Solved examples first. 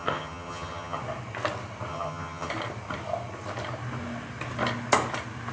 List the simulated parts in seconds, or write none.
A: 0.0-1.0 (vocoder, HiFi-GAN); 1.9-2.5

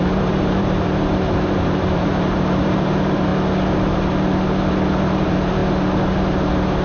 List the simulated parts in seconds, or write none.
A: 0.0-3.3 (vocoder, BigVGAN v2); 5.0-5.6

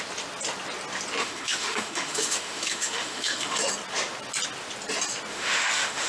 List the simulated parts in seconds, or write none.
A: 1.2-3.7 (autoencoder, DAC-VAE); 5.3-6.1

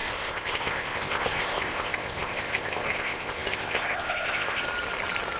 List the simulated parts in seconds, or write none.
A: 0.0-4.6 (codec, ZipCodec)

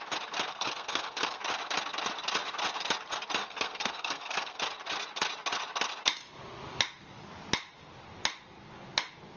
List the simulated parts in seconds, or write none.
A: 0.5-1.4 (codec, SNAC); 3.4-4.6